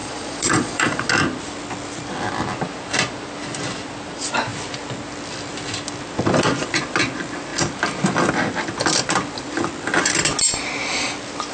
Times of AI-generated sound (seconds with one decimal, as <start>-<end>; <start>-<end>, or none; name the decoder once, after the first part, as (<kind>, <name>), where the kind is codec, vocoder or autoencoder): 0.0-1.1 (vocoder, Vocos)